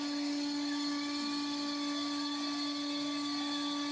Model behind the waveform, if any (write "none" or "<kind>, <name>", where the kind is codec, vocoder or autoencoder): none